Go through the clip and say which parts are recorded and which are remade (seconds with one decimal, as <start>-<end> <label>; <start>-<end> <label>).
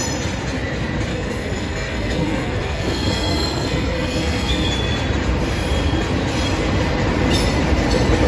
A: 0.0-1.1 recorded; 1.1-4.7 remade; 4.7-8.3 recorded